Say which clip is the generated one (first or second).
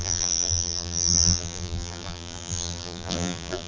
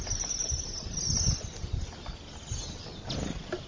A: first